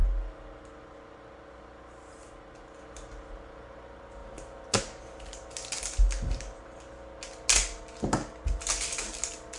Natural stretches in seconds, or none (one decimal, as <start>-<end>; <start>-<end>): 0.0-9.6